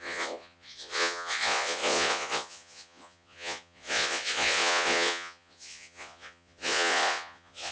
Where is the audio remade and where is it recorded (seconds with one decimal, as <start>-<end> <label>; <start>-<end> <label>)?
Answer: 0.0-7.7 remade